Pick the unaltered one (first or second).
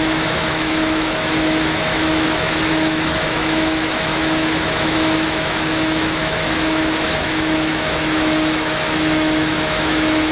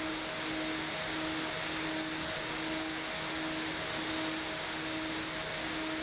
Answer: second